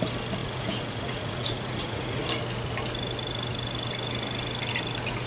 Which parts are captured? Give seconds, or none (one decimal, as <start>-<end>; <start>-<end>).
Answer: 0.0-0.4; 2.2-5.3